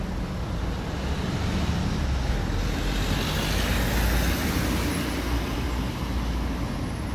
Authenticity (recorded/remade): recorded